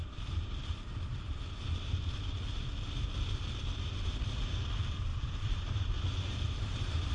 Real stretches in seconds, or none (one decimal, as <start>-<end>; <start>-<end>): 2.4-5.1

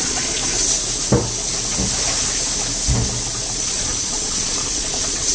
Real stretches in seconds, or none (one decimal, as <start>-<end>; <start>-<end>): 0.4-3.6

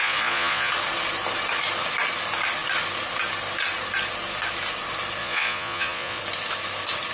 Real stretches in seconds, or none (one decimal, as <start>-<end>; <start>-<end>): 0.7-5.2; 6.2-7.1

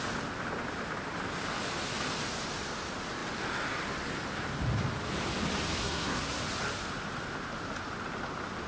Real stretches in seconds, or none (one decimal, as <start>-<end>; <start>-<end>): 0.0-5.8; 6.4-8.7

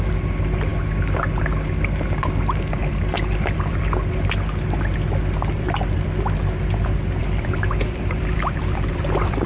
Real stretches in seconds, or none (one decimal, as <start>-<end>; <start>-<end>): 0.0-2.8; 4.1-7.2

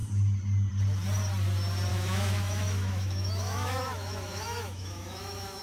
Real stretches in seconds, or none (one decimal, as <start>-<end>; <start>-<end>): 0.0-1.9